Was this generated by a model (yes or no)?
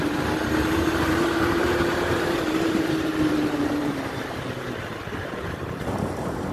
yes